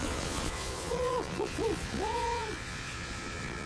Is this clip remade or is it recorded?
remade